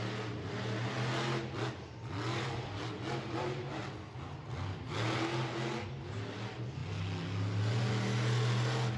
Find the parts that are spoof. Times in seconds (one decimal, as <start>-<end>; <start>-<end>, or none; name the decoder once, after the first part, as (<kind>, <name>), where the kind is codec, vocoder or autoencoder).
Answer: none